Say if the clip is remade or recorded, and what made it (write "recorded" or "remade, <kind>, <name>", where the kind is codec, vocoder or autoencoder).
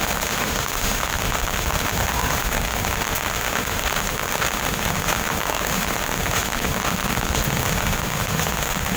remade, autoencoder, DAC-VAE